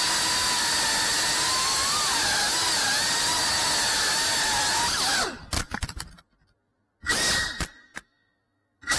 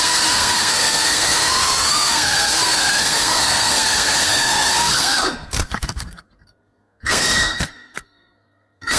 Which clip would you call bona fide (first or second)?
first